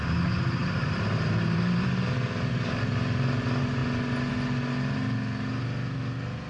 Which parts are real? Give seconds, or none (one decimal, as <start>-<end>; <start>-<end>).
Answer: 0.0-0.6; 1.9-6.5